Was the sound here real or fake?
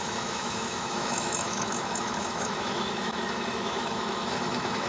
fake